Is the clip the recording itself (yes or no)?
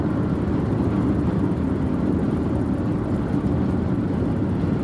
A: yes